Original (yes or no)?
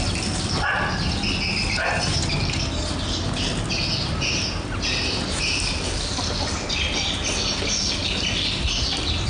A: yes